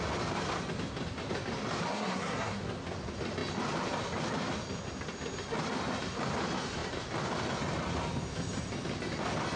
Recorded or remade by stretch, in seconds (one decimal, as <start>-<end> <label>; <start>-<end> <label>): 0.0-1.9 recorded; 1.9-2.6 remade; 2.6-9.6 recorded